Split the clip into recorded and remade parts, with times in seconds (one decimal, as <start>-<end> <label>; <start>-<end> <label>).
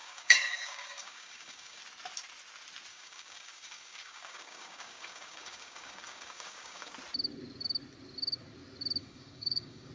0.0-1.8 remade; 1.8-2.9 recorded; 2.9-6.9 remade; 6.9-9.0 recorded; 9.0-9.9 remade